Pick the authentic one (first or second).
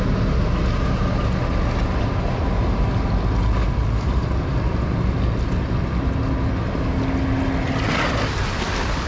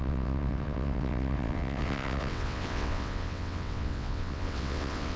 first